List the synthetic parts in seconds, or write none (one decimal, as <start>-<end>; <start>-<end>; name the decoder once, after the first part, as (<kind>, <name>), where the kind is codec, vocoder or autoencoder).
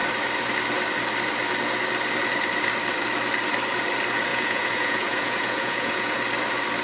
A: 4.3-6.2 (vocoder, Vocos)